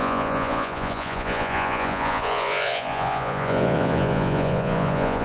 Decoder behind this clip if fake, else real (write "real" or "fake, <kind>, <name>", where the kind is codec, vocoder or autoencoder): fake, vocoder, Vocos